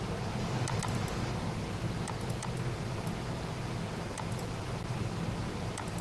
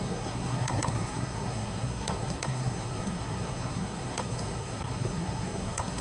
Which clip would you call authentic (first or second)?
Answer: first